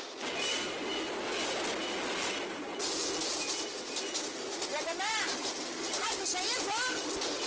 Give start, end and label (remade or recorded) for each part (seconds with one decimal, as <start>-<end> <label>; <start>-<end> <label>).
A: 0.0-7.5 recorded